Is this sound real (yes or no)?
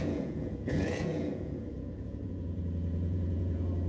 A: no